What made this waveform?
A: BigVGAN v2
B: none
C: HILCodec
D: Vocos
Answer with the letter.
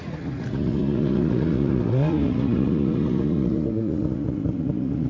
D